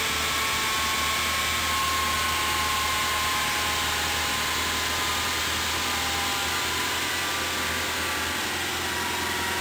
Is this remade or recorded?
recorded